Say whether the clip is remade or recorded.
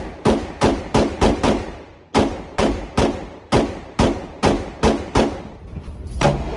remade